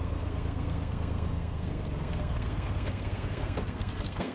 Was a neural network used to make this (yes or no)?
yes